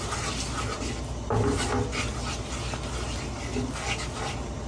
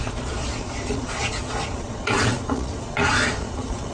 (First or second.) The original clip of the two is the first